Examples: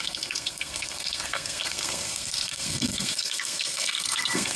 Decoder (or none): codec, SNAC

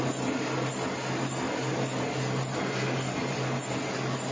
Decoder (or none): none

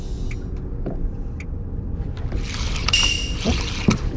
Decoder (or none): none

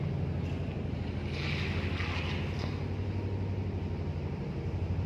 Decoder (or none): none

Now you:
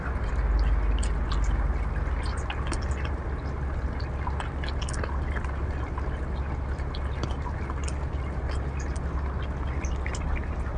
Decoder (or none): none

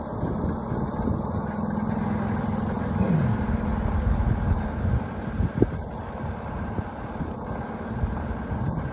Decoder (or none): none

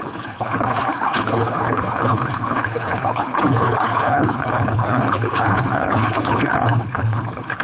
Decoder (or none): codec, HILCodec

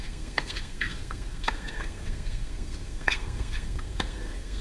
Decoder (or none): codec, SNAC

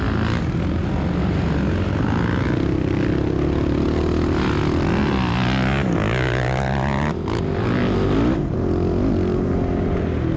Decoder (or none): none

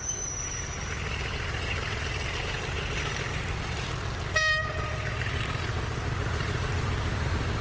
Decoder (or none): vocoder, BigVGAN v2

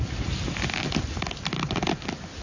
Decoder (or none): none